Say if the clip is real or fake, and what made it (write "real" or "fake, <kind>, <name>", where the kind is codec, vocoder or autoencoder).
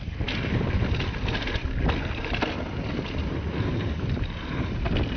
real